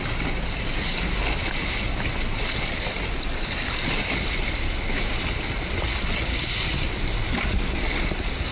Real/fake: real